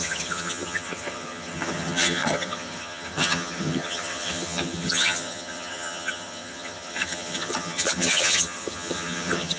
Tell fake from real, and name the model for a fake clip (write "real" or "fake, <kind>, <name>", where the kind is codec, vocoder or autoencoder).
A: fake, vocoder, HiFi-GAN